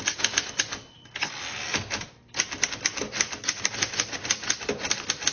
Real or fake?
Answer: real